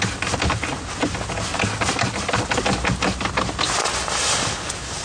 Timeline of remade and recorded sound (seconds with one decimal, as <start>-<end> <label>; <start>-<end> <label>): 0.0-1.5 recorded; 1.5-2.4 remade; 2.4-5.0 recorded